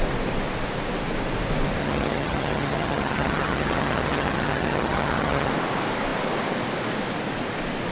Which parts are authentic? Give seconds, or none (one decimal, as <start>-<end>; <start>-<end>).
0.0-1.8; 5.5-7.9